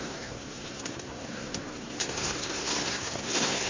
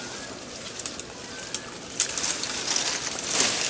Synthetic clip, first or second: first